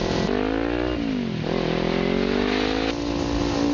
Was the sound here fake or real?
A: real